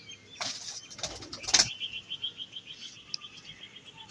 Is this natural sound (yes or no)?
yes